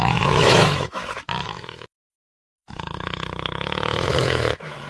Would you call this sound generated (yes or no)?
yes